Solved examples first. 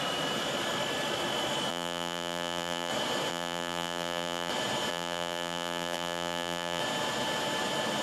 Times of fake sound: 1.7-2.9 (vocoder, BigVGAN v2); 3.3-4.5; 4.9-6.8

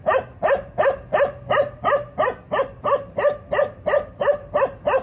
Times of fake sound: none

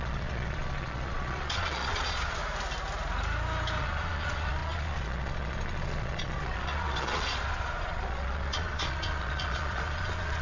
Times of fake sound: 0.0-2.4 (vocoder, Vocos); 3.8-10.4

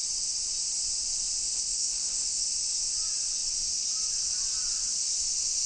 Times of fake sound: 1.4-2.5 (codec, ZipCodec)

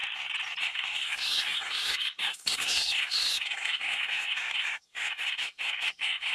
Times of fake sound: 0.6-6.3 (codec, SNAC)